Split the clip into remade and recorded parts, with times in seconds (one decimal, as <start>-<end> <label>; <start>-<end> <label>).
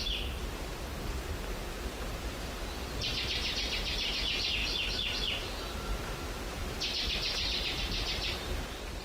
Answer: 0.0-9.0 recorded